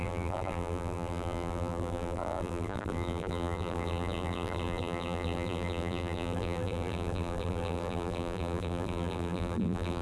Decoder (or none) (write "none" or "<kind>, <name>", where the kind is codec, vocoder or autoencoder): vocoder, BigVGAN v2